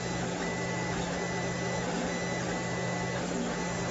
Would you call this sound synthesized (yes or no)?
no